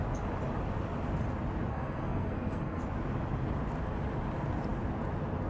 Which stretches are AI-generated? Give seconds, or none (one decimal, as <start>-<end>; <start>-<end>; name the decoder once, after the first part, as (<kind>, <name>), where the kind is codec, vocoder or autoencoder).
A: 1.7-2.8 (codec, SNAC)

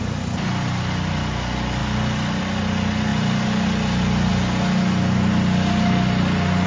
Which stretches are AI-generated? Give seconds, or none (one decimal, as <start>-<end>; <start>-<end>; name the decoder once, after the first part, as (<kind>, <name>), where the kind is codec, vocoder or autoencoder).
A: none

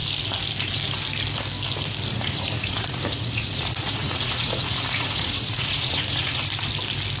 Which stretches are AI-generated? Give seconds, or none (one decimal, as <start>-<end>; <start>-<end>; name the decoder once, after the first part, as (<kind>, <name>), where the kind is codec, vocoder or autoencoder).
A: 2.1-6.4 (vocoder, Vocos)

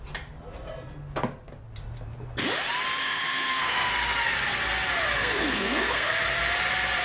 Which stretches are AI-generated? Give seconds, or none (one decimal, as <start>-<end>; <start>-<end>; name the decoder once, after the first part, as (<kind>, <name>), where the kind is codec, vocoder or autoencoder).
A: 3.0-3.9 (codec, SNAC); 5.2-6.1

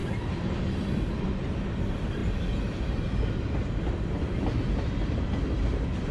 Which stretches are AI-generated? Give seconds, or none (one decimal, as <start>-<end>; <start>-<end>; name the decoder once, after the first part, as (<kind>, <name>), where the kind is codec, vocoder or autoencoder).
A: none

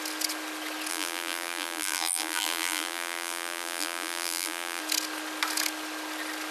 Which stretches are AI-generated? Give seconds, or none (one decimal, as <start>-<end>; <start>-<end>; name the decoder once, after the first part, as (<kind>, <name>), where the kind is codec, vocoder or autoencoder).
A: 0.9-4.8 (vocoder, BigVGAN v2)

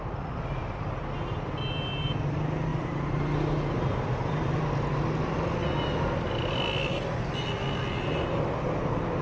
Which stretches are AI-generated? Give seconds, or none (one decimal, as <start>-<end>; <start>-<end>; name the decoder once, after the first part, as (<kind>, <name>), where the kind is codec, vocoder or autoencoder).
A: none

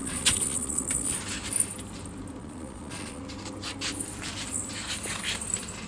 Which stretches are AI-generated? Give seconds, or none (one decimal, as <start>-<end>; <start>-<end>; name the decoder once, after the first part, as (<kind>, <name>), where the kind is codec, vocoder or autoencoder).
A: 0.0-1.2 (vocoder, Vocos); 2.4-3.2